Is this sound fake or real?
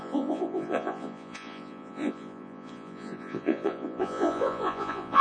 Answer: fake